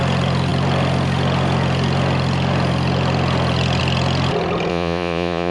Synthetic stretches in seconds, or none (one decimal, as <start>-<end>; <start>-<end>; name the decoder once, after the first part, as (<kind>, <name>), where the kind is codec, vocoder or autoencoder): 4.7-5.5 (vocoder, Vocos)